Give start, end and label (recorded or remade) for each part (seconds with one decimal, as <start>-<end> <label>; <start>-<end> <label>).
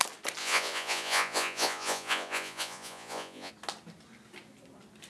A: 0.0-0.4 recorded; 0.4-3.5 remade; 3.5-5.1 recorded